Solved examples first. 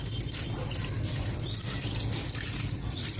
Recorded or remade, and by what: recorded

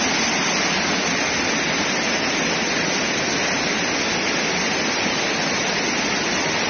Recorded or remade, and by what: recorded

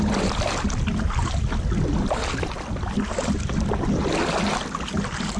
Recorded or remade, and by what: recorded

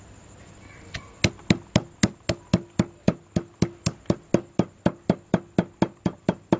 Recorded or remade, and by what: recorded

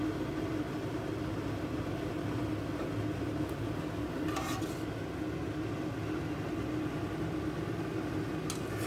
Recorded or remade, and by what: recorded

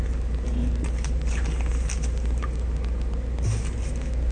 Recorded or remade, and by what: recorded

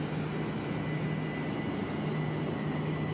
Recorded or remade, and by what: recorded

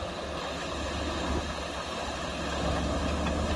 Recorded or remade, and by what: recorded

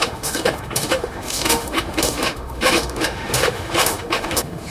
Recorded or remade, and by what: remade, autoencoder, DAC-VAE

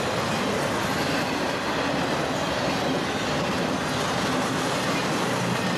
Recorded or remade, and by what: recorded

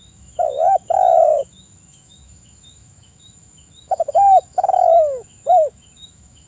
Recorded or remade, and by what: remade, autoencoder, DAC-VAE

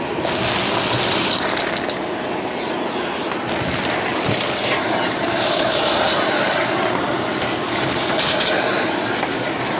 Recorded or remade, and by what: recorded